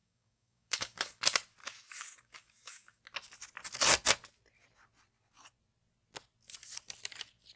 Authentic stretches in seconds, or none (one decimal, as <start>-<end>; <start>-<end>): 1.2-1.6; 3.0-7.6

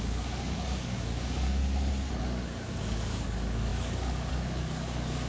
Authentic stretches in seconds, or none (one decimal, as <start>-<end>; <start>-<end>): 1.6-2.2

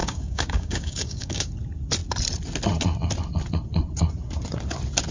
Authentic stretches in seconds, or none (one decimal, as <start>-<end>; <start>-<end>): 1.5-5.1

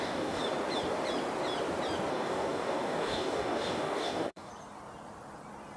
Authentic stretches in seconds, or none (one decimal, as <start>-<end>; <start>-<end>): 0.4-2.1; 4.5-5.8

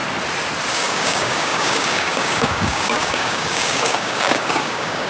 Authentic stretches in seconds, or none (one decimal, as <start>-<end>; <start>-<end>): 0.0-0.7

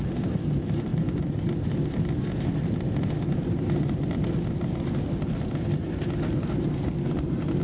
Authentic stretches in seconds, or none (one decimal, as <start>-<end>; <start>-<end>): 0.0-7.6

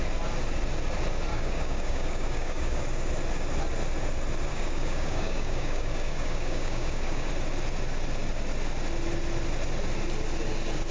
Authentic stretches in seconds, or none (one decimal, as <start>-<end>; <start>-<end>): 0.0-1.3; 2.8-4.5; 7.3-10.9